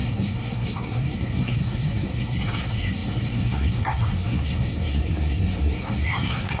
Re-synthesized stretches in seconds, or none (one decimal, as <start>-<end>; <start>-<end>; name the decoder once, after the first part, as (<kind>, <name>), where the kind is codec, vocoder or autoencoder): 0.0-6.6 (codec, SNAC)